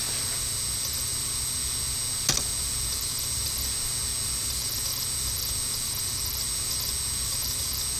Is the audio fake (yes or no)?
no